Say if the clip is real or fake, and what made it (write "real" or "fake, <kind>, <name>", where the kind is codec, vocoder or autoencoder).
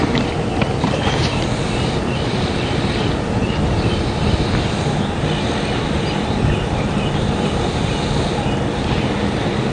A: real